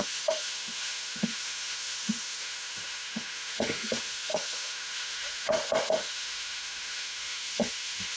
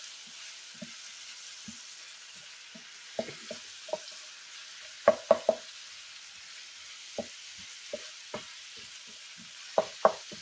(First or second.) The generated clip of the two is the first